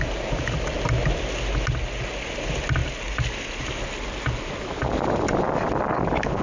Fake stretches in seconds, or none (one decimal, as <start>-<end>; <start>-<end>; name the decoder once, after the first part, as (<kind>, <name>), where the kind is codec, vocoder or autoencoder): none